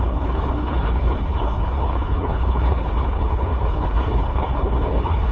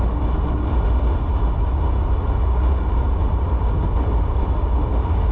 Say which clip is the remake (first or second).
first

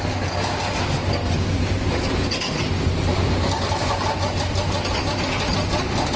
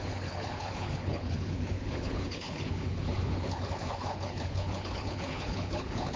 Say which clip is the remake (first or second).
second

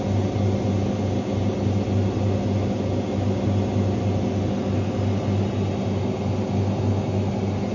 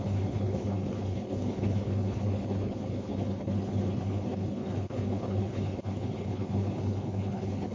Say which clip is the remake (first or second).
second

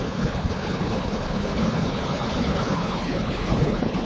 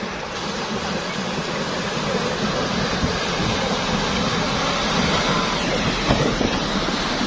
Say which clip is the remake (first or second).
first